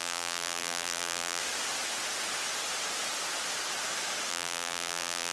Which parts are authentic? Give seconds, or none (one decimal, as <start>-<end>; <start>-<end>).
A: 1.4-4.3